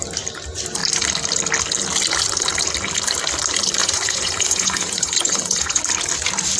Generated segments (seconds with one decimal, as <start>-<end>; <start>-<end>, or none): 3.8-5.8